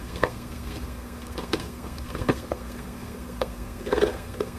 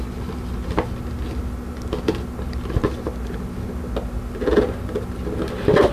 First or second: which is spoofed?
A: first